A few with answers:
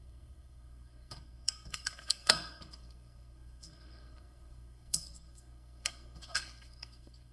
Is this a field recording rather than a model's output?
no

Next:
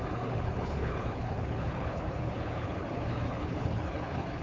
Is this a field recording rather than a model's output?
no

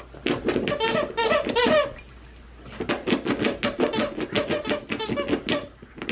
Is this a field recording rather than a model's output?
yes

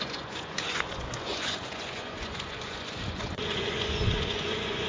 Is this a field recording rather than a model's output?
no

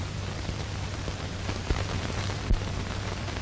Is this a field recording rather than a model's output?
no